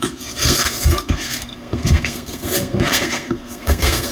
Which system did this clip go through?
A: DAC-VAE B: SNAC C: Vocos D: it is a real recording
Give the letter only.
B